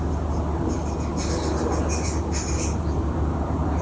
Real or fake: real